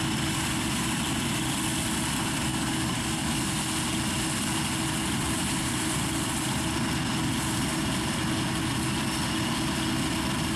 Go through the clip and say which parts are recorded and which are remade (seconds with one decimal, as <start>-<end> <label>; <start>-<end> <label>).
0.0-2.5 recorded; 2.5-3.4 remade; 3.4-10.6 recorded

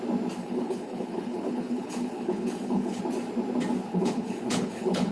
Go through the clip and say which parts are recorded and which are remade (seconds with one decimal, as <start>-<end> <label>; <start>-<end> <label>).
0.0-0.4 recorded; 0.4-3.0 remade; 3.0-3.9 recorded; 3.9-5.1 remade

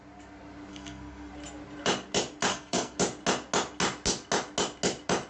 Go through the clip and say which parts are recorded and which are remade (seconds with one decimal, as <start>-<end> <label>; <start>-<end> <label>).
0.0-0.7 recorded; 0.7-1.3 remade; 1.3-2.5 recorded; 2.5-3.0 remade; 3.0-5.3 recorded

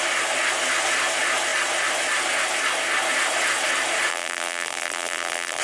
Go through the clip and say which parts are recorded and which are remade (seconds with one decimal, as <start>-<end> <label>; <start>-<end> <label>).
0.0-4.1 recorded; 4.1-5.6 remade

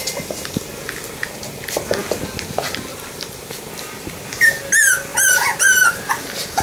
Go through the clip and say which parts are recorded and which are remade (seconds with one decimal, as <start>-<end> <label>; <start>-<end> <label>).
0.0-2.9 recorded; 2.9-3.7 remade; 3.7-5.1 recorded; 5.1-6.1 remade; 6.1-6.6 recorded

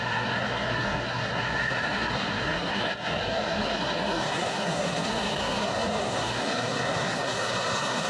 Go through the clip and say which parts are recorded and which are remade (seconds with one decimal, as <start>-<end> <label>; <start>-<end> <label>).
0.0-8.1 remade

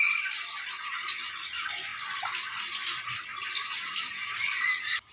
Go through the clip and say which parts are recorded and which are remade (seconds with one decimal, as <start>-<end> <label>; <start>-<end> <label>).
0.0-3.4 recorded; 3.4-4.6 remade; 4.6-5.1 recorded